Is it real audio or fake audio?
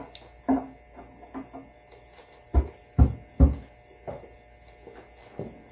real